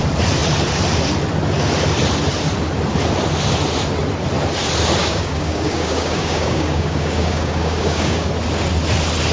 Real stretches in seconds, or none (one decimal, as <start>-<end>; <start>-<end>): 0.0-5.0; 8.3-9.3